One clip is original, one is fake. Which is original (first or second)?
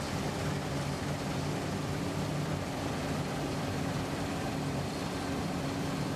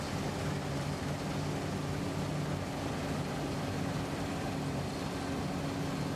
second